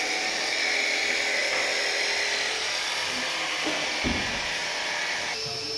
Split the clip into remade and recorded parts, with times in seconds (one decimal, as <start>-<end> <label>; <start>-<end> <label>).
0.0-5.8 recorded

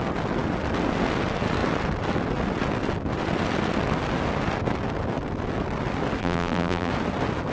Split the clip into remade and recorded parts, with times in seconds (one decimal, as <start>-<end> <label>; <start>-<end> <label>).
0.0-6.2 recorded; 6.2-6.9 remade; 6.9-7.5 recorded